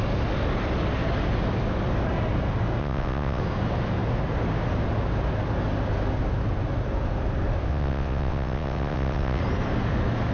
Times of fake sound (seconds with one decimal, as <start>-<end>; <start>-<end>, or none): 2.8-3.4; 7.7-9.4